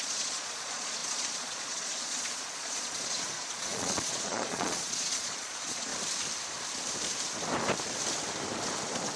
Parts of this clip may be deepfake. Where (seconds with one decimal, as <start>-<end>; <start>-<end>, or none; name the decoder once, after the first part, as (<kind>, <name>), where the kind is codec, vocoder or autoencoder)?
0.0-5.9 (vocoder, Vocos)